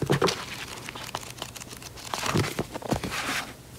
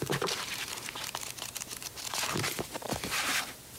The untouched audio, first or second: first